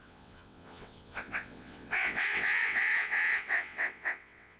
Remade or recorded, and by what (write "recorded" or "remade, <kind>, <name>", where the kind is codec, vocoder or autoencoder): remade, vocoder, WaveNeXt